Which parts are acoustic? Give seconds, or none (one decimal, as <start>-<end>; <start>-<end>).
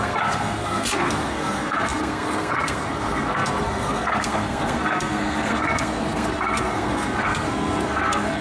none